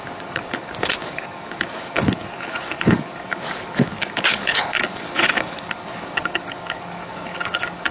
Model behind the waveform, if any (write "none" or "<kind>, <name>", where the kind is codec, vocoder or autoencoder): codec, DAC